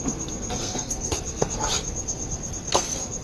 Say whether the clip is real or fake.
fake